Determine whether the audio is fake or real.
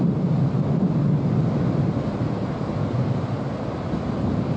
real